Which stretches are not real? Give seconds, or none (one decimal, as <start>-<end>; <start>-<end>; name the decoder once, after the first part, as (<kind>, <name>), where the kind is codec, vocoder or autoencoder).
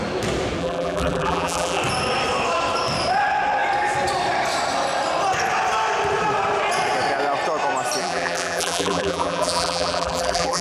0.6-1.8 (vocoder, BigVGAN v2); 8.0-10.6